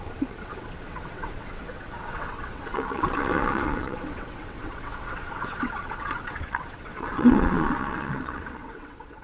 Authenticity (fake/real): fake